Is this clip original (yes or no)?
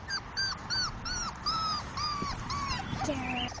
yes